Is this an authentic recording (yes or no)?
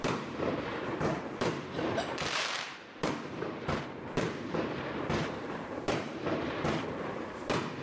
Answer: no